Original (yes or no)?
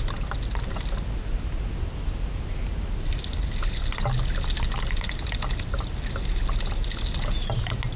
yes